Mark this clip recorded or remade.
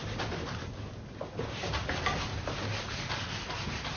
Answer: recorded